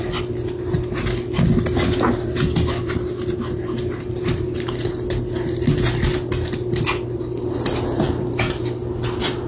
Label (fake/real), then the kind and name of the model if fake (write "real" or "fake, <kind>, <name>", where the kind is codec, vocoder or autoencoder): real